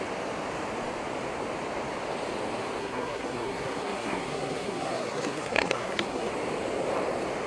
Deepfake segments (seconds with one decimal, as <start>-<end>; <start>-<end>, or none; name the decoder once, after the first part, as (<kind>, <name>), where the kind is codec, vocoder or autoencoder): 2.8-6.3 (codec, SNAC)